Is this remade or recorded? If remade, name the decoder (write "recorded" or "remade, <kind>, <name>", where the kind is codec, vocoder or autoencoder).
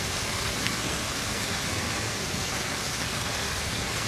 remade, codec, SNAC